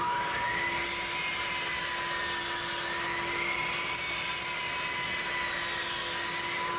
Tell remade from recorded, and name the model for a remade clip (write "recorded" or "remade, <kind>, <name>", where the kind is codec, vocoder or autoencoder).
recorded